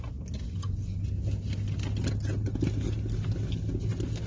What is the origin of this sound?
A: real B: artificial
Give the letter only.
A